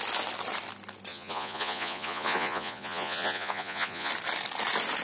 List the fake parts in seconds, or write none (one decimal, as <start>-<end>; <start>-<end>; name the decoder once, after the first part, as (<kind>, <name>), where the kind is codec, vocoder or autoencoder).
1.1-4.1 (vocoder, Vocos)